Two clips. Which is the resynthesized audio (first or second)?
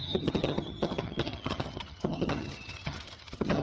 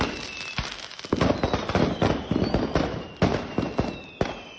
first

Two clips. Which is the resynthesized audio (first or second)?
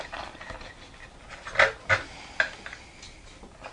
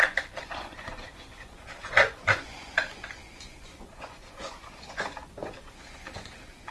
second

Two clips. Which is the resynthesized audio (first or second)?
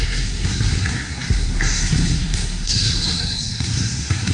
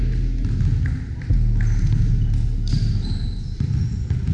first